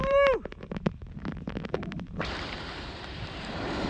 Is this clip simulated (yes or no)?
yes